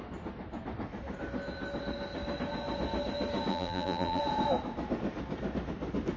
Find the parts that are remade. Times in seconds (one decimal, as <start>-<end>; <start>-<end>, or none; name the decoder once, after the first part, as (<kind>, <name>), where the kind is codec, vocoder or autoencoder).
3.5-4.2 (vocoder, BigVGAN v2)

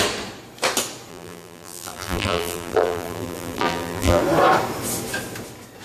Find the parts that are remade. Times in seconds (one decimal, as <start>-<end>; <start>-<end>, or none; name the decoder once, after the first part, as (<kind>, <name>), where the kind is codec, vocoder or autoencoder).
1.1-4.2 (vocoder, BigVGAN v2)